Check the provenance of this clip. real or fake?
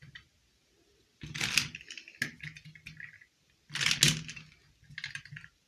real